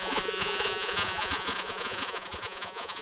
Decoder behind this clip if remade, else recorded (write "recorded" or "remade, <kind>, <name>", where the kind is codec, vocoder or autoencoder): remade, vocoder, Vocos